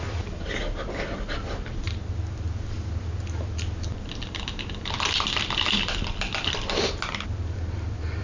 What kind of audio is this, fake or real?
real